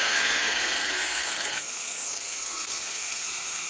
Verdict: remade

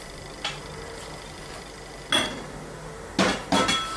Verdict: recorded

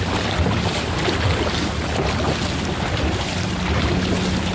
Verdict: recorded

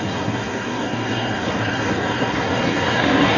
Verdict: remade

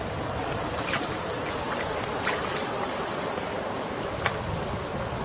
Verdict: recorded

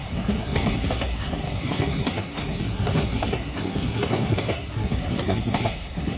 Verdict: remade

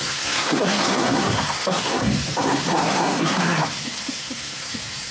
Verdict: remade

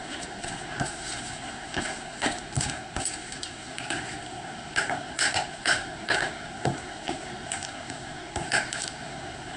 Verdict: remade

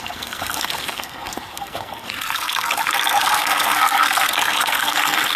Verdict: remade